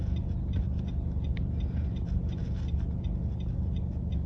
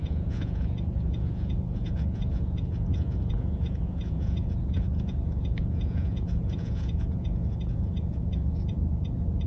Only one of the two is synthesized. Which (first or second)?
second